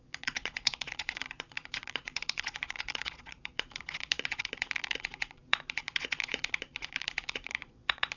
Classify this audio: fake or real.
fake